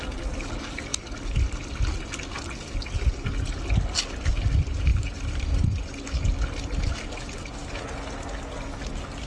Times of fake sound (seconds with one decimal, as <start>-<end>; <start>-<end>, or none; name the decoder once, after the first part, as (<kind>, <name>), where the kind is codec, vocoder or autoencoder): 4.9-6.0 (vocoder, BigVGAN v2)